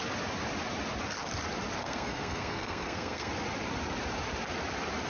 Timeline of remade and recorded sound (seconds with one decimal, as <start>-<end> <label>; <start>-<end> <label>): 0.0-1.8 recorded; 1.8-3.3 remade; 3.3-5.1 recorded